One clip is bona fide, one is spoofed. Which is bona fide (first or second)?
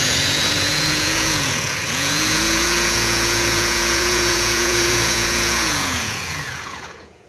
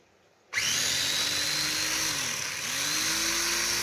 second